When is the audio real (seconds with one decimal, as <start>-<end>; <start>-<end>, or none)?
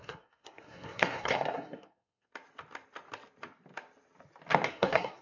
2.3-4.7